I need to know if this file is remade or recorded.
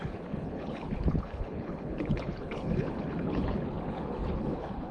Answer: remade